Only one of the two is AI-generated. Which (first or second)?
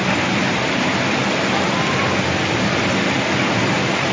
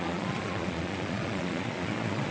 second